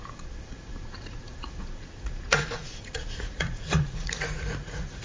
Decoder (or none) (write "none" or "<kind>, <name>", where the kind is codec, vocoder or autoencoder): vocoder, Vocos